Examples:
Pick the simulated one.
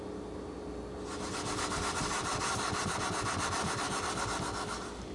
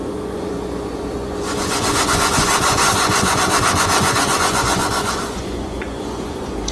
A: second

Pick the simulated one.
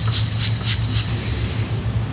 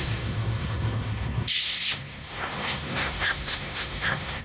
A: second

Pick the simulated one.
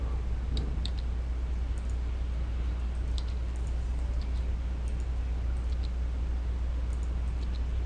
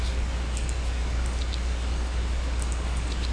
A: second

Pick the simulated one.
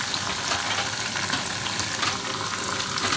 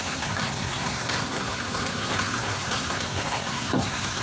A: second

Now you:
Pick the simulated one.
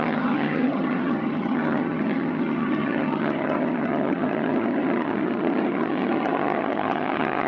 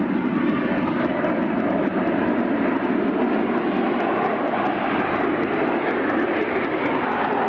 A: first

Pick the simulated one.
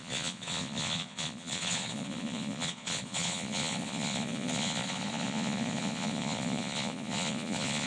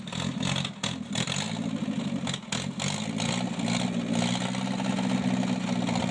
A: first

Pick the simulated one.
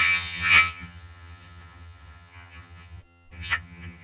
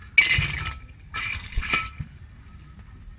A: first